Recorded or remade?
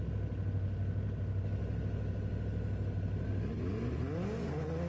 recorded